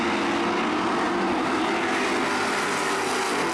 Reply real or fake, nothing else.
real